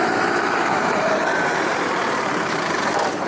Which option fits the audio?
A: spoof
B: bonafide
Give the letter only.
A